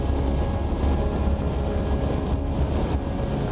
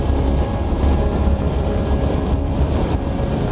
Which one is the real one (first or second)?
first